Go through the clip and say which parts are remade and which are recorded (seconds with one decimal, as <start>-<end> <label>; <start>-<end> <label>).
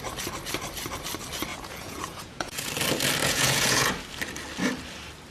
0.0-1.5 recorded; 1.5-2.7 remade; 2.7-3.2 recorded; 3.2-3.9 remade; 3.9-5.3 recorded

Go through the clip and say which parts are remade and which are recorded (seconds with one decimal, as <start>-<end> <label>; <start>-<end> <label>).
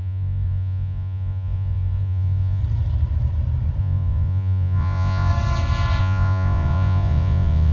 0.0-2.6 remade; 2.6-3.8 recorded; 3.8-5.3 remade; 5.3-6.0 recorded; 6.0-7.7 remade